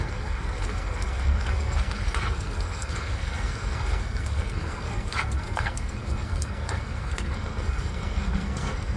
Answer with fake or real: fake